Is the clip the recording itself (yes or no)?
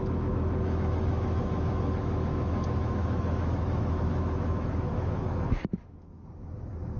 no